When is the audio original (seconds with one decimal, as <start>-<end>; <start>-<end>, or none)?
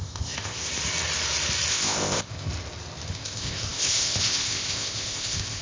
0.7-1.7; 2.5-3.1